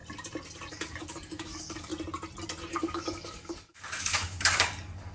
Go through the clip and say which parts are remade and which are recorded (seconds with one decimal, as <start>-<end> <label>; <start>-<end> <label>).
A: 0.0-0.7 recorded; 0.7-1.9 remade; 1.9-2.7 recorded; 2.7-5.1 remade